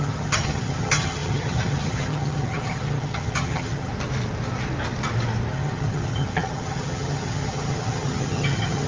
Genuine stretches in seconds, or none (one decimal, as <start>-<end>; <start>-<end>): 3.9-5.5